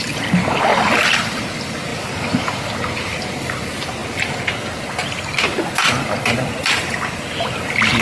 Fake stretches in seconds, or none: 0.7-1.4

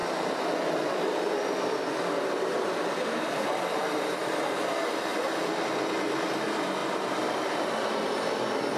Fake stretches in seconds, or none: 0.0-3.8; 6.8-7.6

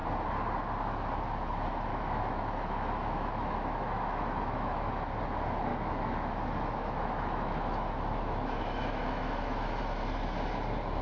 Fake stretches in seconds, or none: 1.9-5.2; 5.7-9.8

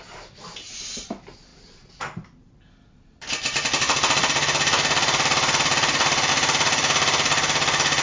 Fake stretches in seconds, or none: none

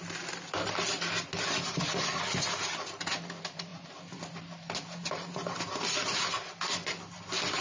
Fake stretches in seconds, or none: none

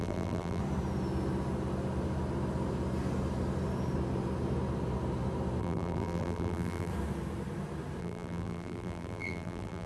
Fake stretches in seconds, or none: 0.0-0.6; 5.6-6.9; 8.0-9.9